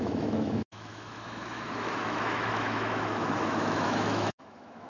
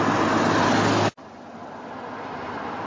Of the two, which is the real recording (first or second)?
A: second